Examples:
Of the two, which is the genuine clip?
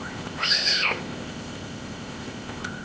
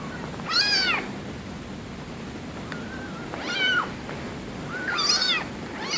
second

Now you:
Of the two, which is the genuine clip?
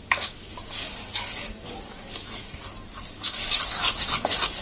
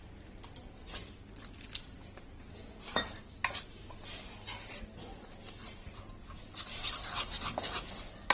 second